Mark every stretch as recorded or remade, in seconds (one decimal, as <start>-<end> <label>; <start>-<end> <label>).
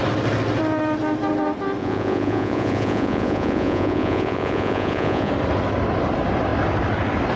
0.0-1.8 recorded; 1.8-5.3 remade; 5.3-7.4 recorded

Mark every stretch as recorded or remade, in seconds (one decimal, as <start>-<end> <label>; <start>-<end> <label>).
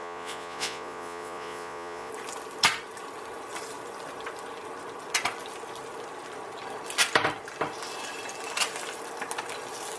0.0-2.1 remade; 2.1-10.0 recorded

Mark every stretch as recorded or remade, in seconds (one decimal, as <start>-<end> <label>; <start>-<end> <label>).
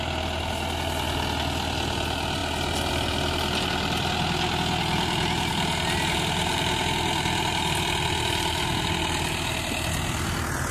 0.0-10.7 recorded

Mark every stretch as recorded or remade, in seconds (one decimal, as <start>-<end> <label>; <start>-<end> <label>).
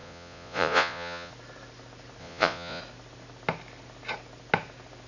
0.0-1.3 remade; 1.3-2.2 recorded; 2.2-2.8 remade; 2.8-5.1 recorded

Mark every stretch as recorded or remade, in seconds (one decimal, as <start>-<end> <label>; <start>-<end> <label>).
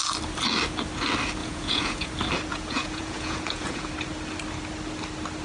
0.0-1.4 recorded; 1.4-2.1 remade; 2.1-2.5 recorded; 2.5-3.9 remade; 3.9-5.4 recorded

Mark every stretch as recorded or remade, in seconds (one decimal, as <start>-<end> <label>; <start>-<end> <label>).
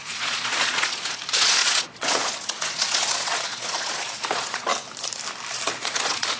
0.0-4.7 remade; 4.7-5.7 recorded; 5.7-6.4 remade